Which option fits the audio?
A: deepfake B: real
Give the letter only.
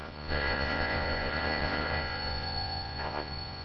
A